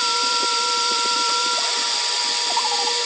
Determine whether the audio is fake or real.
fake